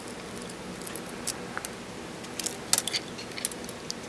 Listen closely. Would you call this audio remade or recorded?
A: recorded